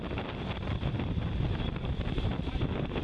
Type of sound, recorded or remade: recorded